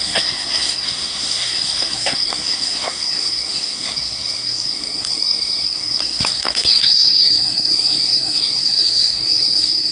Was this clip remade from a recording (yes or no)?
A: yes